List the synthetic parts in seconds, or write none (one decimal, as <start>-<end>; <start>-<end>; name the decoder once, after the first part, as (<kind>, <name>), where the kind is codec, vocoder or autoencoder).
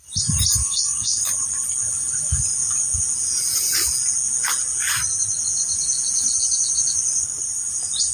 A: 0.6-1.2 (codec, SNAC)